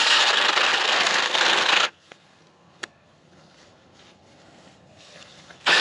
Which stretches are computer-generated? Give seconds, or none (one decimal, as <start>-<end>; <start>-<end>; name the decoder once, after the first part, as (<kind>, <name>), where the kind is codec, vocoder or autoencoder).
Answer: 0.0-5.8 (codec, SNAC)